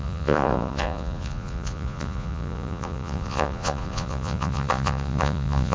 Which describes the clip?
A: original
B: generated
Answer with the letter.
B